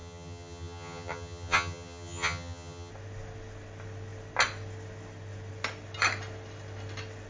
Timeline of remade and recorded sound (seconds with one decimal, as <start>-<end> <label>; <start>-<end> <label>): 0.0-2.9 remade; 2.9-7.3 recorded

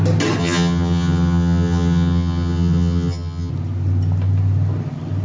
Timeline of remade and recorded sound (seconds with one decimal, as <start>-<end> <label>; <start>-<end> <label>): 0.0-0.4 recorded; 0.4-3.5 remade; 3.5-5.2 recorded

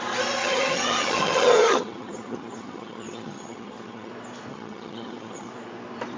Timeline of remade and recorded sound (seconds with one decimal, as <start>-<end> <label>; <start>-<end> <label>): 0.0-0.4 recorded; 0.4-4.1 remade; 4.1-4.5 recorded; 4.5-5.5 remade; 5.5-6.2 recorded